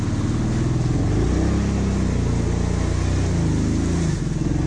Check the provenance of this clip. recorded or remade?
recorded